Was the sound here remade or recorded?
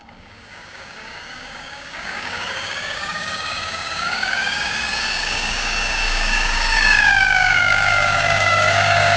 remade